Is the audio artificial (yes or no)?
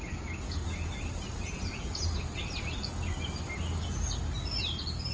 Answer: no